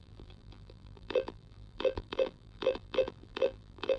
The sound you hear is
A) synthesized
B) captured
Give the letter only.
A